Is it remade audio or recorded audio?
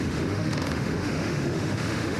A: remade